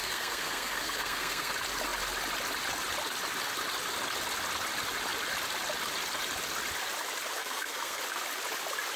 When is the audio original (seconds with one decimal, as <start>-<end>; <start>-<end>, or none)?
1.5-7.4; 8.0-9.0